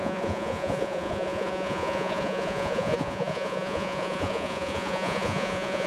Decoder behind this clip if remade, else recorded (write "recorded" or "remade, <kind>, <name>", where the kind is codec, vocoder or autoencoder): remade, vocoder, Vocos